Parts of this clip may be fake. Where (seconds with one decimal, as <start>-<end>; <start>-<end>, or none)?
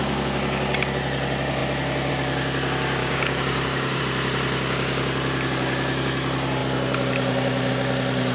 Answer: 3.0-4.0